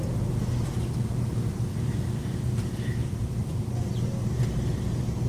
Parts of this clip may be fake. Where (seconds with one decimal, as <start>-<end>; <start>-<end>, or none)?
1.7-3.6